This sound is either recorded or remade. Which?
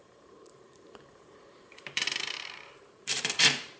remade